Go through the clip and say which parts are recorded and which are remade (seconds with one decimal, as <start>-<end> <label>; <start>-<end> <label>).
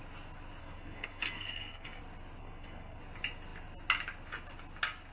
0.0-0.6 recorded; 0.6-2.0 remade; 2.0-2.4 recorded; 2.4-3.0 remade; 3.0-5.1 recorded